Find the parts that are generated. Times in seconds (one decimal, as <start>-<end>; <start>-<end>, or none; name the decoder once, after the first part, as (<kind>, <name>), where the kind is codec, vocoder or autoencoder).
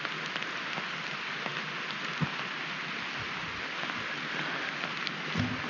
none